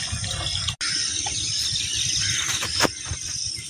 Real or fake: real